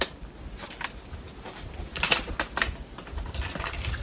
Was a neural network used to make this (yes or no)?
no